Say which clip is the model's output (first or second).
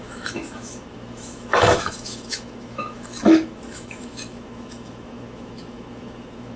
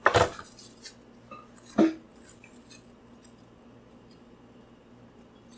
first